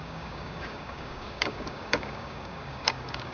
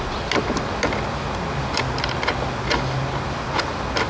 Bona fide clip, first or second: second